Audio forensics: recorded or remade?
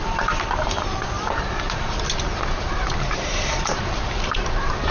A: remade